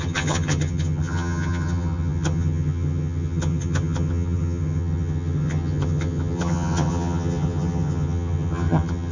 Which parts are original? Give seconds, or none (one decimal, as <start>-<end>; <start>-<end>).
none